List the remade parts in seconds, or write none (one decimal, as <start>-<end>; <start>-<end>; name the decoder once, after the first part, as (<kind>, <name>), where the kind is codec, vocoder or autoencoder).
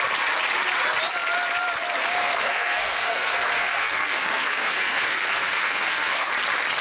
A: 2.2-6.3 (codec, SNAC)